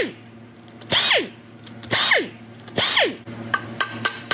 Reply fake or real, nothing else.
real